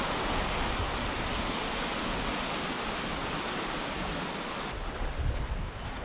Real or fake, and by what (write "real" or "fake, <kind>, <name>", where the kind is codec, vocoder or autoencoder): real